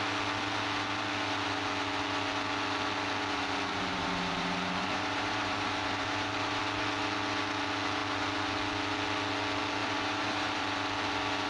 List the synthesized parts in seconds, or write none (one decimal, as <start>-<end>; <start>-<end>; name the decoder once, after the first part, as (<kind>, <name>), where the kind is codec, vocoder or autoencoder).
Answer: 3.7-6.6 (vocoder, BigVGAN v2); 9.8-10.6